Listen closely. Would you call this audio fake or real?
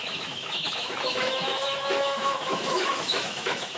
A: fake